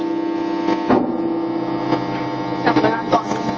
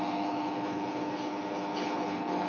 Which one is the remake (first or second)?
second